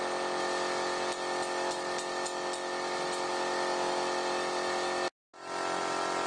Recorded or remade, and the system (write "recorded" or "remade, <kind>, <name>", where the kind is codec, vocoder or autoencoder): recorded